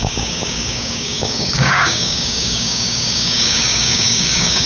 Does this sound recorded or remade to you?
remade